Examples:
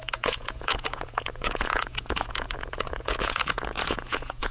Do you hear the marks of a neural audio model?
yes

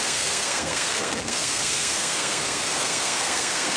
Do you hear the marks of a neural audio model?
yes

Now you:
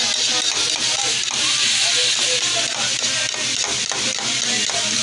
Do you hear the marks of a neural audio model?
no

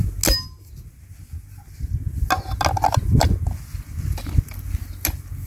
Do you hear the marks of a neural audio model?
no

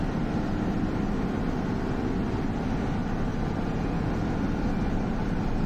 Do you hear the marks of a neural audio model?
no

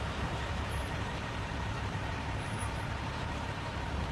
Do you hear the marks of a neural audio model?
yes